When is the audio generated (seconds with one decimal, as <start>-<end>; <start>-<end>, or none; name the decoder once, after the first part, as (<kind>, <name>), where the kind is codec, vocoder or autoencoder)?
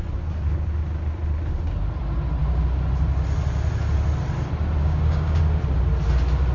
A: 4.8-5.4 (codec, DAC)